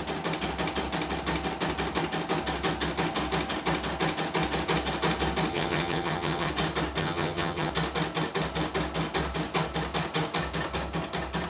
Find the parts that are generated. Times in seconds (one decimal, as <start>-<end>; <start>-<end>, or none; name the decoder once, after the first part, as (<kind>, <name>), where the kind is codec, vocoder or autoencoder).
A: 5.5-6.5 (vocoder, HiFi-GAN); 7.0-7.7